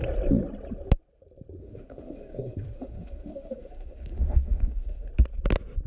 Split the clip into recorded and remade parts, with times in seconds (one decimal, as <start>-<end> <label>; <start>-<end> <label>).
0.0-1.6 recorded; 1.6-5.1 remade; 5.1-5.9 recorded